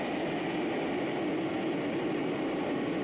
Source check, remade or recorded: recorded